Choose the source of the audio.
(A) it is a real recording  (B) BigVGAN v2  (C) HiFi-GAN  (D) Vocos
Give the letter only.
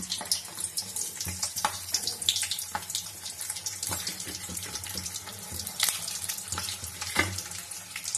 B